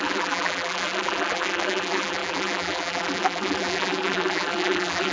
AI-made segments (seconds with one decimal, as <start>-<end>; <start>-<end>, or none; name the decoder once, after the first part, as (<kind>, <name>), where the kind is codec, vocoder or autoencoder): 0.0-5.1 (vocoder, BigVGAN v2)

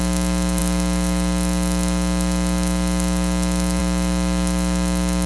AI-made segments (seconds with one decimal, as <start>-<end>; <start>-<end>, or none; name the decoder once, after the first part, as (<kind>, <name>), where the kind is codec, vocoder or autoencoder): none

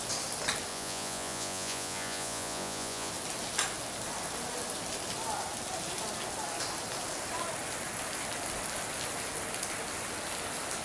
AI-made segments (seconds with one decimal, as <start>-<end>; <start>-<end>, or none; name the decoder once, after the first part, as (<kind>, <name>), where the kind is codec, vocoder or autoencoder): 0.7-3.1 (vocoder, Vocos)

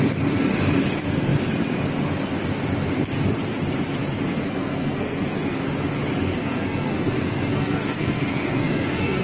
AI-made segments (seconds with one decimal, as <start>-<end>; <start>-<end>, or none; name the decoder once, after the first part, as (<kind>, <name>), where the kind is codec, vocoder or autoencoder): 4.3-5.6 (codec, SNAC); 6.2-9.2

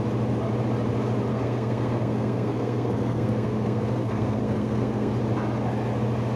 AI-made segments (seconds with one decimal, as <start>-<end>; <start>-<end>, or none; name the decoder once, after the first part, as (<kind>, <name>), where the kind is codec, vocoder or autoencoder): 1.3-5.1 (codec, SNAC)

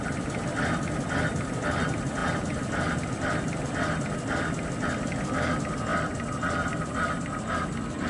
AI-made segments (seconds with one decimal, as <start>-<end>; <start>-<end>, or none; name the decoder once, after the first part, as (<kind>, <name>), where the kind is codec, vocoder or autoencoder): none